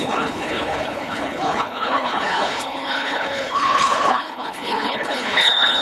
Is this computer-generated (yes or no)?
yes